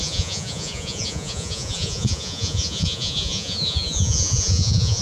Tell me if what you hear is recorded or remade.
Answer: remade